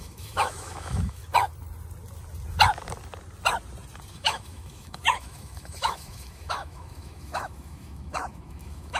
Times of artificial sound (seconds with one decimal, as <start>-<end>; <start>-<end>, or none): 0.0-1.2; 4.1-9.0